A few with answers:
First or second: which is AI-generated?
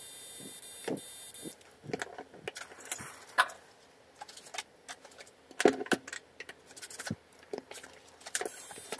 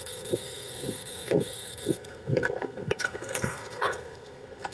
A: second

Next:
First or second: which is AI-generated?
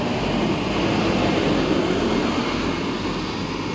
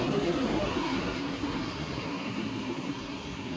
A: second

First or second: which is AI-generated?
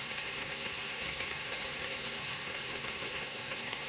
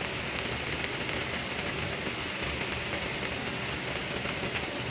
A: first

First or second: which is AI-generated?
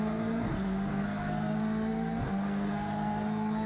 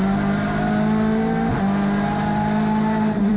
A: first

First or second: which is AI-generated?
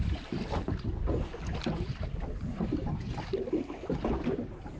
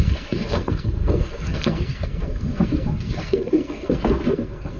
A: second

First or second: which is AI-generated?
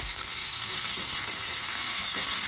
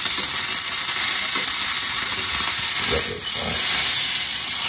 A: first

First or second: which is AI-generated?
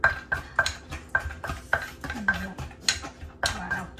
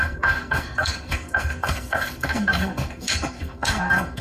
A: second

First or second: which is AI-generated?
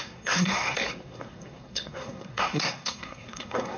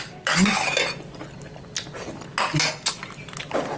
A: first